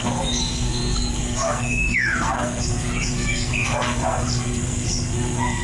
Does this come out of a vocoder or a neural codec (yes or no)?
yes